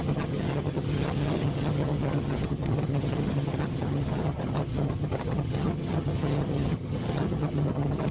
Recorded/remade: remade